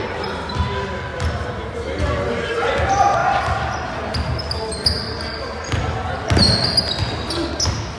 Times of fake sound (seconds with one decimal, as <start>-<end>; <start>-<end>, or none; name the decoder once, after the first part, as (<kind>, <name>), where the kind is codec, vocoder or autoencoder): 1.1-2.0 (vocoder, BigVGAN v2)